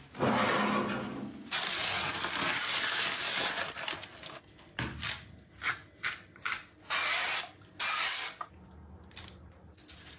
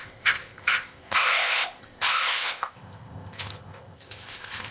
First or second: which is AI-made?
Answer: second